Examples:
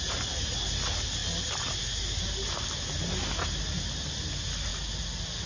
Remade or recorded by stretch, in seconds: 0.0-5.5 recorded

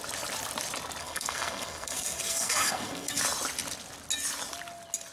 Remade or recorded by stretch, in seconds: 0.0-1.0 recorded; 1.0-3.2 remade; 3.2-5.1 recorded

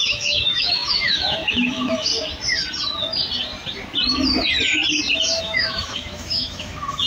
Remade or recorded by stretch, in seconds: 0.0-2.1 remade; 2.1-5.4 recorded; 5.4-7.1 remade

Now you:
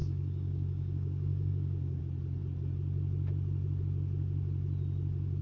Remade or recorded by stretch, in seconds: 0.0-2.0 remade; 2.0-5.4 recorded

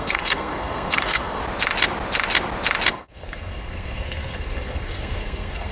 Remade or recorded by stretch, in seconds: 0.0-1.4 remade; 1.4-2.9 recorded; 2.9-5.7 remade